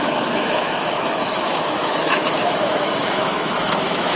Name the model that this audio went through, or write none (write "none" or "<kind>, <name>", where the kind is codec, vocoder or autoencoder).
autoencoder, DAC-VAE